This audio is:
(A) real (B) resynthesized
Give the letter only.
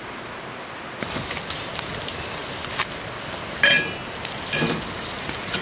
A